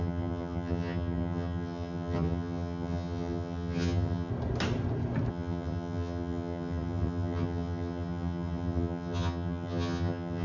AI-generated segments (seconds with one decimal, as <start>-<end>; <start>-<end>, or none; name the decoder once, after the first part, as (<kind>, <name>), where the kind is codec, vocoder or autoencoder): 0.0-4.3 (vocoder, HiFi-GAN); 5.3-10.4